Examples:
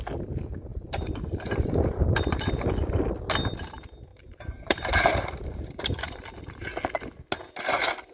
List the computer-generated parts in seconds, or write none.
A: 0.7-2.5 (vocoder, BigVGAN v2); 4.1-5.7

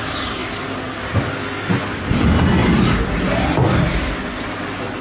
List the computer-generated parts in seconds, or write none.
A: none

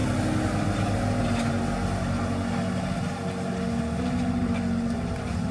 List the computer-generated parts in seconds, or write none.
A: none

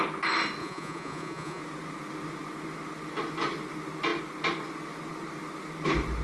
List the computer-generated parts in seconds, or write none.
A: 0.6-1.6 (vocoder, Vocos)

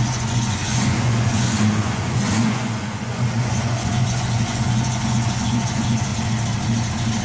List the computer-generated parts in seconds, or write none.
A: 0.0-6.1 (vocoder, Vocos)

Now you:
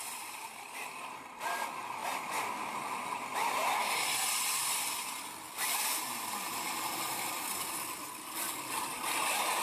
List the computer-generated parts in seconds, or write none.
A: none

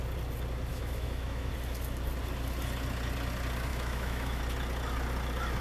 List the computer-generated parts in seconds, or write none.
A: 0.7-1.5 (autoencoder, DAC-VAE); 3.7-4.4

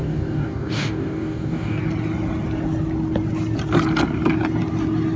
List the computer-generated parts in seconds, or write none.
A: 0.0-1.8 (codec, DAC)